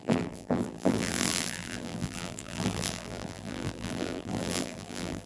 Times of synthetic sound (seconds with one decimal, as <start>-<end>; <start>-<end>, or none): 0.0-5.3